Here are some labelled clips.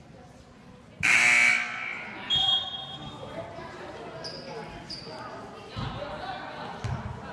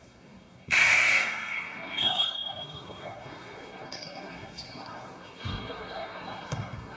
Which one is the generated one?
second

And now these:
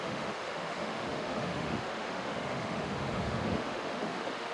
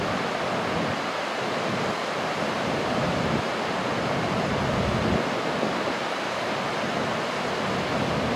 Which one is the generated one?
first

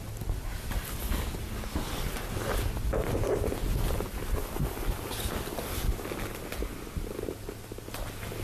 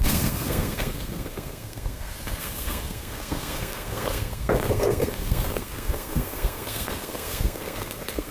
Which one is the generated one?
second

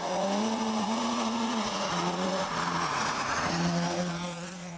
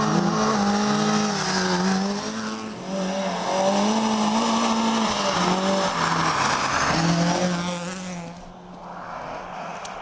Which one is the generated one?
first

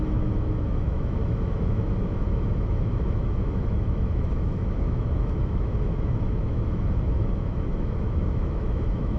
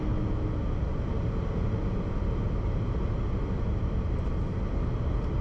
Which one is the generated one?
first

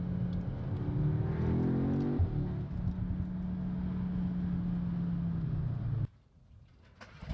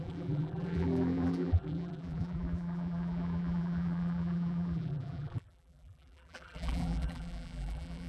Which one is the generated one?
second